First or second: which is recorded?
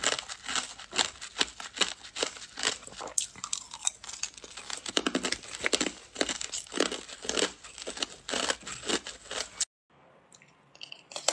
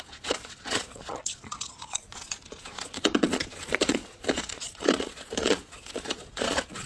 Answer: first